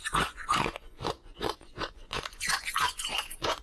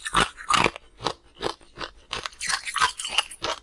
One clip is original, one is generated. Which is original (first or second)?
second